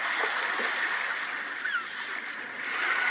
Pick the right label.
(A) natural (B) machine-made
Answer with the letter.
A